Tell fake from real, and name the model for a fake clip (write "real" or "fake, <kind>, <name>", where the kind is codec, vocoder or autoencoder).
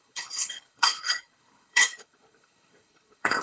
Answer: fake, codec, HILCodec